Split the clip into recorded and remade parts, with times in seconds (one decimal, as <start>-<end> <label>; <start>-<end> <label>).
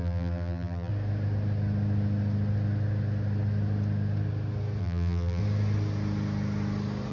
0.0-0.9 remade; 0.9-4.8 recorded; 4.8-5.4 remade; 5.4-7.1 recorded